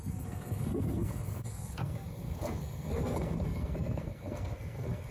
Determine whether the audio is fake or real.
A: fake